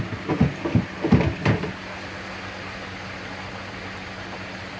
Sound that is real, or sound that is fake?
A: real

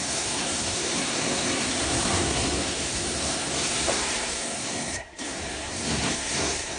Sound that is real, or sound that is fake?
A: fake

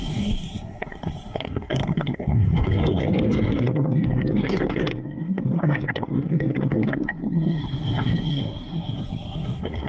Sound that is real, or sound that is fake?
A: fake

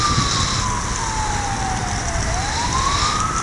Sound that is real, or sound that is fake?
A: real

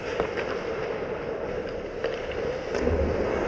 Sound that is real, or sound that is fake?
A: real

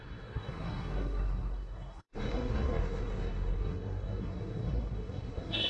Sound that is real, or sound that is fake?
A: fake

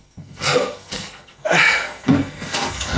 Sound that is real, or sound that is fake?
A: fake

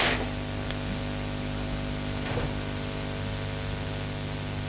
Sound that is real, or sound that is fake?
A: real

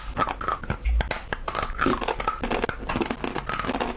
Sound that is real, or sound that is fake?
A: real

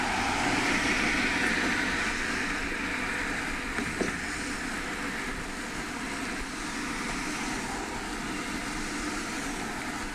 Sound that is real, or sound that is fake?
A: real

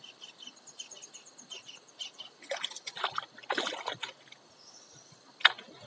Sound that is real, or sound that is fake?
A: real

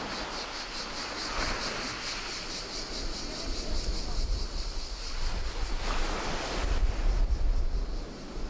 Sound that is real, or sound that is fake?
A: real